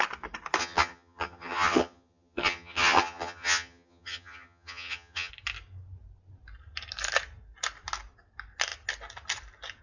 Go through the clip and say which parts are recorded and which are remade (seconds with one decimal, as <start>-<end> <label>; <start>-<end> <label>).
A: 0.0-0.6 recorded; 0.6-5.3 remade; 5.3-9.8 recorded